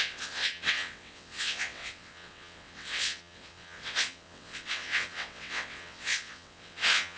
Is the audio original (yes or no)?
no